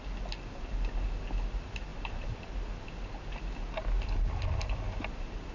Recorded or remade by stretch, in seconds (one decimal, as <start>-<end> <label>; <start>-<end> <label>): 0.0-5.5 recorded